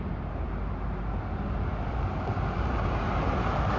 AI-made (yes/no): no